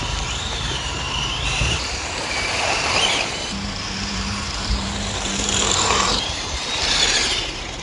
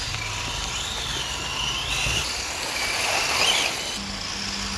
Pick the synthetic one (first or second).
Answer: first